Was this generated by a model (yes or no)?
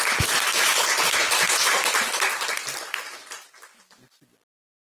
no